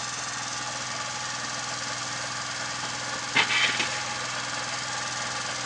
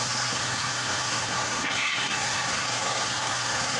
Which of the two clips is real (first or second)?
first